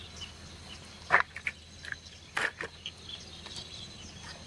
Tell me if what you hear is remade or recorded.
recorded